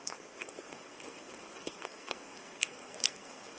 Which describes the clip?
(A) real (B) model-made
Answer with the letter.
B